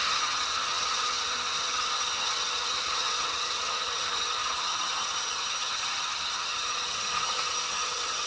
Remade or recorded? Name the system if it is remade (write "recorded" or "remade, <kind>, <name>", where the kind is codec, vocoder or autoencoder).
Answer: remade, vocoder, HiFi-GAN